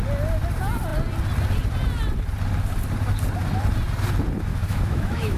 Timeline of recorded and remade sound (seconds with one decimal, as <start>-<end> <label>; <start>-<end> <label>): 0.0-4.5 recorded; 4.5-5.4 remade

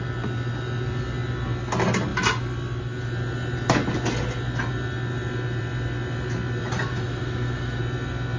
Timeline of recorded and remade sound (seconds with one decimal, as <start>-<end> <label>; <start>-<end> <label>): 0.0-6.9 recorded; 6.9-7.8 remade; 7.8-8.4 recorded

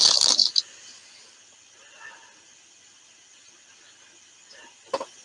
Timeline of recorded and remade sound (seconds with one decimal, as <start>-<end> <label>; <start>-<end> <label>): 0.0-5.2 recorded

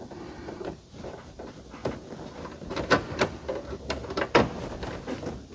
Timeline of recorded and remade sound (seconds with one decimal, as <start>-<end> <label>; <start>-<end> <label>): 0.0-5.5 recorded